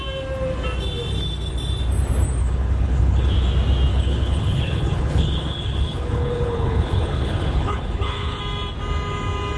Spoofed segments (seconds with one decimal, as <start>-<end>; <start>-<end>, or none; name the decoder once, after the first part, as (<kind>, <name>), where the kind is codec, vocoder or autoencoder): 2.4-3.3 (codec, HILCodec); 3.9-8.4